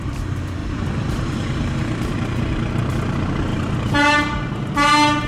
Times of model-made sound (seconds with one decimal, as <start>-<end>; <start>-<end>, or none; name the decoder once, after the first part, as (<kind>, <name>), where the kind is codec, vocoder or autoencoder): 0.6-2.7 (vocoder, BigVGAN v2); 3.5-4.7